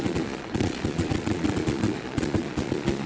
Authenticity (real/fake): fake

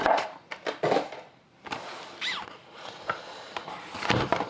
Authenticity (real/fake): real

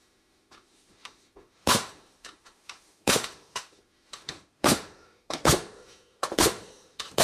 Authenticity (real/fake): fake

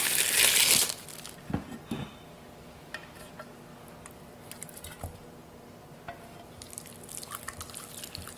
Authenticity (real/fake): real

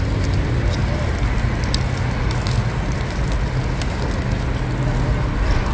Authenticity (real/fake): real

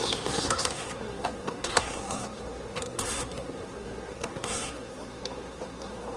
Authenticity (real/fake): fake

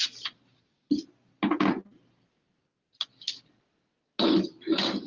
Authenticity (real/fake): real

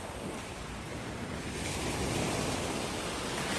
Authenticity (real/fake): real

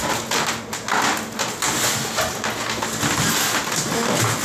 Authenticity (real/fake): real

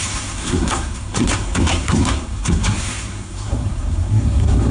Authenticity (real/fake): fake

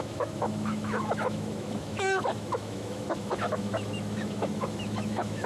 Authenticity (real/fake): fake